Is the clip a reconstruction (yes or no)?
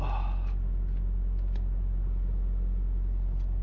no